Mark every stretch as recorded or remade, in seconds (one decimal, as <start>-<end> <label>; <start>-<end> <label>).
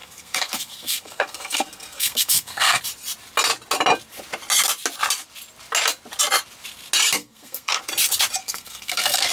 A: 0.0-2.8 remade; 2.8-7.2 recorded; 7.2-7.8 remade; 7.8-8.4 recorded; 8.4-9.3 remade